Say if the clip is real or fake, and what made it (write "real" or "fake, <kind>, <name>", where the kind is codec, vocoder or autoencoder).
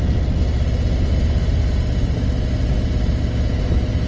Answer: real